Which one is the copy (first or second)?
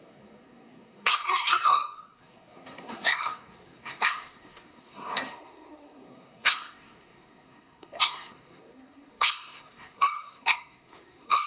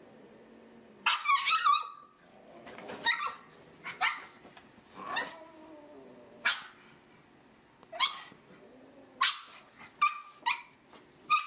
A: first